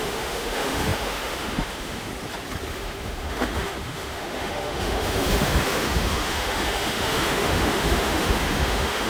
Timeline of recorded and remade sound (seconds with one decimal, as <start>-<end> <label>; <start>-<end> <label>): 0.0-2.1 remade; 2.1-2.7 recorded; 2.7-9.1 remade